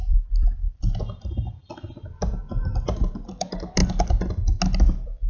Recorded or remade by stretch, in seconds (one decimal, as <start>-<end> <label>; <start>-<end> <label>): 0.0-1.6 remade; 1.6-2.5 recorded; 2.5-3.8 remade; 3.8-4.8 recorded; 4.8-5.3 remade